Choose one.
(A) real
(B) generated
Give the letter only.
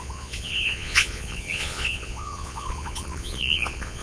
B